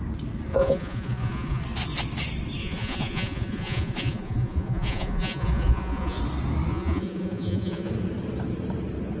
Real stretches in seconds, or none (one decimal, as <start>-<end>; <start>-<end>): 0.0-0.5; 1.6-2.6; 6.2-6.7; 7.9-9.2